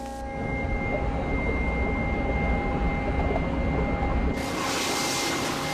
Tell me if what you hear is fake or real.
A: real